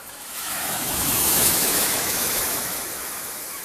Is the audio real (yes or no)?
no